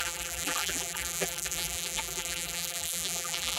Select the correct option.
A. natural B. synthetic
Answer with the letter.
B